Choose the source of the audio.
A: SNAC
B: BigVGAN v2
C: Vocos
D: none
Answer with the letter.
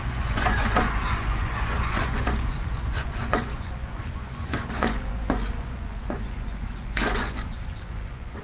C